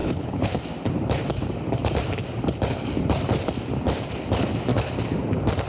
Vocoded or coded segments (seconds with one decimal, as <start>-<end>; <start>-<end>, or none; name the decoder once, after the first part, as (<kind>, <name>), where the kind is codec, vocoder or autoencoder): 0.0-0.6 (codec, HILCodec)